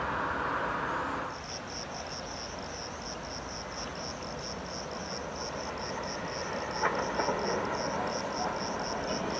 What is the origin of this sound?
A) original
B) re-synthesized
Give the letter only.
A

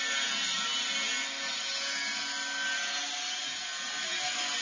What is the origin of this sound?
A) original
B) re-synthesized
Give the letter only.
A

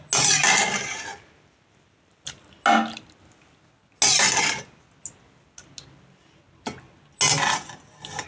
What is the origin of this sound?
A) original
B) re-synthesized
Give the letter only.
A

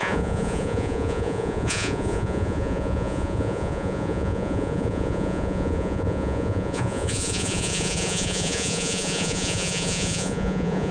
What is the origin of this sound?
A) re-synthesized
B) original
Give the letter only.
A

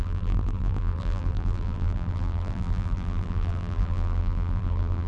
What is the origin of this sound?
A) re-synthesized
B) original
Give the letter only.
A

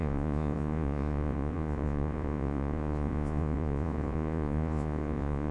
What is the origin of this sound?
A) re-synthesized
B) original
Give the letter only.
A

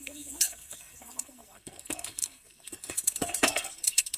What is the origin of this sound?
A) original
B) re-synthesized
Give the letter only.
B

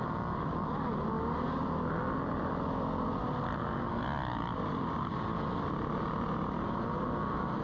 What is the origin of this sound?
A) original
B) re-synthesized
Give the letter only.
A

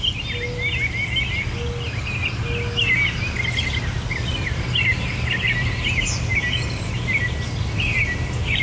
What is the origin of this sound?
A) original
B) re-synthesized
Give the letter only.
A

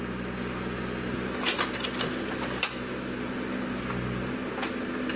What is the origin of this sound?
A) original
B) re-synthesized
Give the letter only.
A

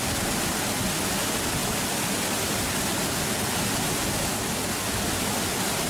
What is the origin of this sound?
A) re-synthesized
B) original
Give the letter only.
B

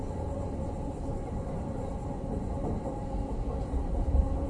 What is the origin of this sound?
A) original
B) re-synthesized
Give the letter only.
A